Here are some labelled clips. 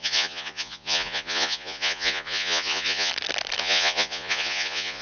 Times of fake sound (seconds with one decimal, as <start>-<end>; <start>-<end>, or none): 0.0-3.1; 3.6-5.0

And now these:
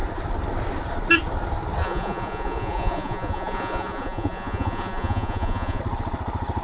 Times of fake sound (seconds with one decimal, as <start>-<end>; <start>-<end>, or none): 1.8-5.8

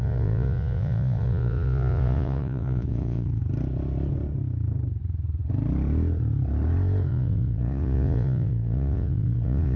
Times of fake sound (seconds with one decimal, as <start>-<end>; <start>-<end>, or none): 0.0-3.4; 7.1-9.8

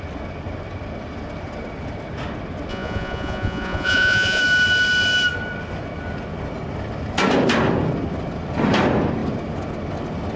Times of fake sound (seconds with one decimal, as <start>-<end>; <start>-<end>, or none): 2.7-4.4

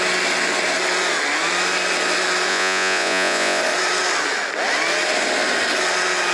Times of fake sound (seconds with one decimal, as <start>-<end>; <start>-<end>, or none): 2.5-3.6